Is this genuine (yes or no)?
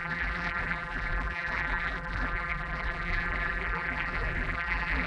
no